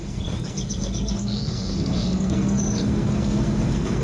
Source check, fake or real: fake